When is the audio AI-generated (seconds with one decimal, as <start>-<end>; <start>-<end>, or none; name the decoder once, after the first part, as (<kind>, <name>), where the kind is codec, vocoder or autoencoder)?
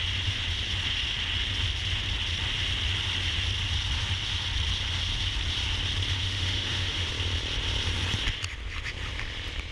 6.2-7.1 (autoencoder, DAC-VAE)